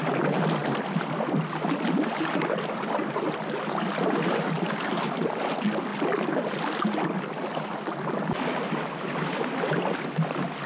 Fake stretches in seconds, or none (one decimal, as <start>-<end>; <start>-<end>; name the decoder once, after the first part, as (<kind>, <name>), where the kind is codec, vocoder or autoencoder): none